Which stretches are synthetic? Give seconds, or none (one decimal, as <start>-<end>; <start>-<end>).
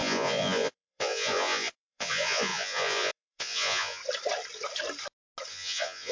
0.0-4.0; 5.5-6.1